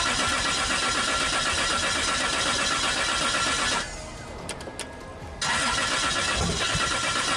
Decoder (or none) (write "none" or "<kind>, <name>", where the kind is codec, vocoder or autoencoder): none